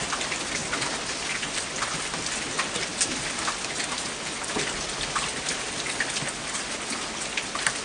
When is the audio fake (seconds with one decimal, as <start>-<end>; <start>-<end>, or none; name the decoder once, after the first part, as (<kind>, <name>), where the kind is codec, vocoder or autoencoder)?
none